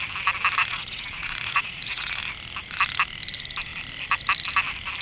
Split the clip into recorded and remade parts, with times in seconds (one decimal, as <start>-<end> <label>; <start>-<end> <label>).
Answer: 0.0-0.6 recorded; 0.6-2.2 remade; 2.2-5.0 recorded